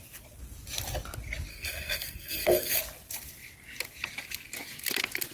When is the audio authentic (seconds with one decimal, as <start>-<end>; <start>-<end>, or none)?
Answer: 0.0-1.5; 2.8-5.3